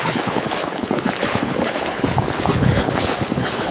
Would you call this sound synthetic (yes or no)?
yes